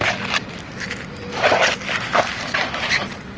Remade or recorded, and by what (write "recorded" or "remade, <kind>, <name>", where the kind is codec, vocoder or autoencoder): recorded